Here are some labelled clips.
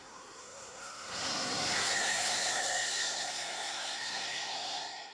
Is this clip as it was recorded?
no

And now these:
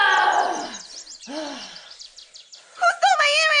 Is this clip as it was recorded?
yes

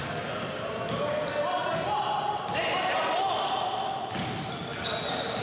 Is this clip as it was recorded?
yes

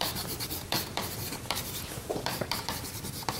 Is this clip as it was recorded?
no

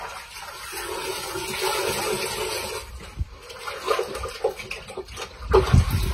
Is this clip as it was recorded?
yes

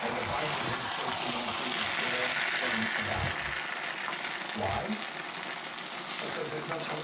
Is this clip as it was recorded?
yes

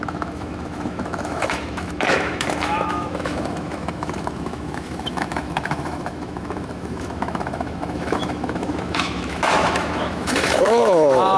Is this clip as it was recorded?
no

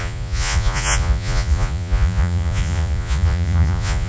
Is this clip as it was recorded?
no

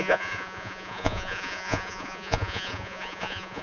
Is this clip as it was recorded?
no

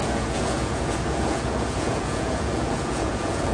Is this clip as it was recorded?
no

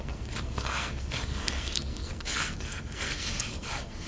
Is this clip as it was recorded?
no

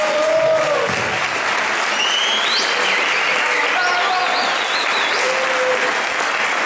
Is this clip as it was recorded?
yes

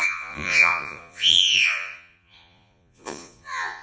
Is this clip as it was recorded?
no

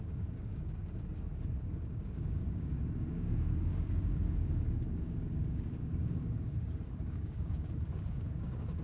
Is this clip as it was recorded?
no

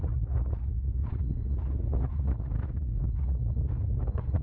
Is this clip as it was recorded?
no